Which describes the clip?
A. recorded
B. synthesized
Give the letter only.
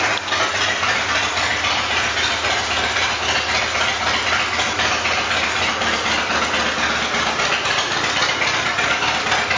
A